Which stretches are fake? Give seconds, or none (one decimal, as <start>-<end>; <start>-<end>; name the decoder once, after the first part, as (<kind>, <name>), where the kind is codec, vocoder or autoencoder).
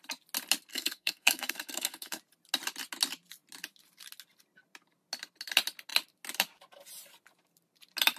0.7-2.2 (codec, SNAC)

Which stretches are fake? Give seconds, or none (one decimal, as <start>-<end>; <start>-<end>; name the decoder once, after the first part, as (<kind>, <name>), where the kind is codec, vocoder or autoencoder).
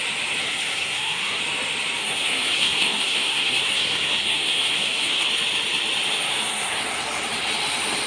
0.4-1.4 (codec, SNAC); 2.0-5.3; 6.3-6.8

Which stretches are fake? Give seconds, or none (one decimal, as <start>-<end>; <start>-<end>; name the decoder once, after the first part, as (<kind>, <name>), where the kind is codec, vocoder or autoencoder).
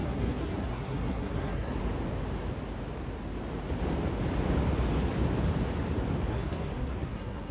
0.0-1.8 (codec, SNAC); 6.3-7.5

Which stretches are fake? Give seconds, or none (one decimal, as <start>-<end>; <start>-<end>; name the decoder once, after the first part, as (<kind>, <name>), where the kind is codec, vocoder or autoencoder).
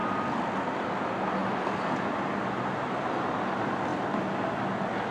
none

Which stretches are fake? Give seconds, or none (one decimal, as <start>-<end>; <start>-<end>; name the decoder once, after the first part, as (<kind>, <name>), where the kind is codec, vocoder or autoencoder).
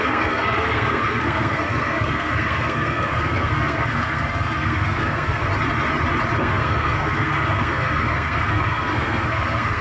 0.0-5.5 (codec, SNAC); 6.4-9.8